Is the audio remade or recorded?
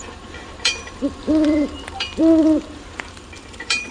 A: remade